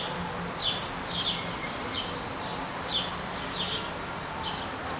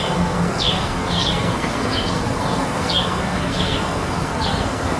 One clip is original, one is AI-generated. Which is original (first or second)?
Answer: first